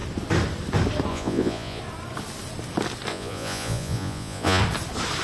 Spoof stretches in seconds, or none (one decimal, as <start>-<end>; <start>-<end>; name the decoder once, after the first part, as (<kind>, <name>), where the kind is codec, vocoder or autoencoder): 1.1-1.8 (vocoder, Vocos); 3.1-4.6

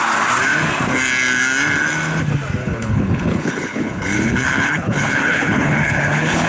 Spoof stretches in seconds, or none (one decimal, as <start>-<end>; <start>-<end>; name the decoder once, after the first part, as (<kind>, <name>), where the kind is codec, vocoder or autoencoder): 2.6-6.5 (codec, HILCodec)

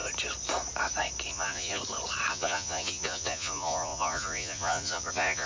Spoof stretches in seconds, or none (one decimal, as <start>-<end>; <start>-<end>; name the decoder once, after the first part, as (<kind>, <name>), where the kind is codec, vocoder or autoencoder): 1.3-1.8 (vocoder, Vocos); 2.3-5.5

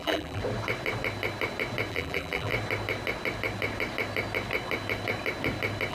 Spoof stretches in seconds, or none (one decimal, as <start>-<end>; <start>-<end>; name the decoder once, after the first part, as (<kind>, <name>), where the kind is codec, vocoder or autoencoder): 0.0-0.4 (vocoder, BigVGAN v2); 1.9-2.5

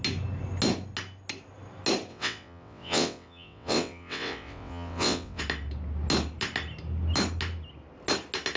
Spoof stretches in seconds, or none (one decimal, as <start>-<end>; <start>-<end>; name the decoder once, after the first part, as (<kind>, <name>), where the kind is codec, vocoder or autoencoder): 2.1-5.4 (vocoder, WaveNeXt)

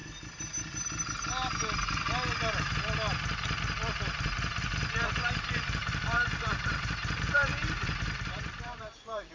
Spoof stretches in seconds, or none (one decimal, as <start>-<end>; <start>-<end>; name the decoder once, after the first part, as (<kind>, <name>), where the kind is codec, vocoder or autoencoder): 5.1-9.3 (vocoder, BigVGAN v2)

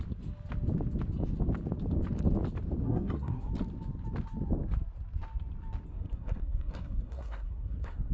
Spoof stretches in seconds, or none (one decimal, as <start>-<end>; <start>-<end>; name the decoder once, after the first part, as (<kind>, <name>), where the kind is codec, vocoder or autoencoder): 2.8-3.5 (codec, SNAC); 5.9-8.1

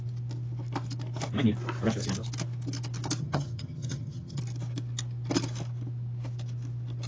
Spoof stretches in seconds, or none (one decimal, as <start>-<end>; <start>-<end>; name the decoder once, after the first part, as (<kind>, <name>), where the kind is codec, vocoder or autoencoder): 3.2-4.4 (vocoder, HiFi-GAN)